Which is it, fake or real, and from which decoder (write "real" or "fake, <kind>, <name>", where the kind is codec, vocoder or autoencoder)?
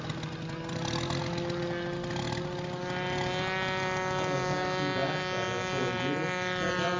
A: real